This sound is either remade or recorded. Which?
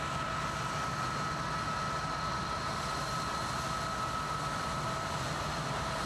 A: recorded